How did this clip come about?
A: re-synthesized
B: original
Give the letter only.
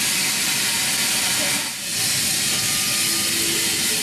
B